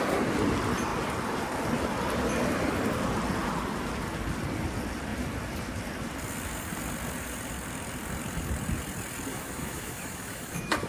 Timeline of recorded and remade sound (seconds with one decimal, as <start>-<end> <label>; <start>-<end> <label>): 0.0-9.3 recorded; 9.3-10.9 remade